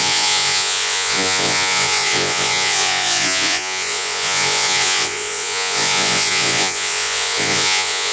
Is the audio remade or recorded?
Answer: remade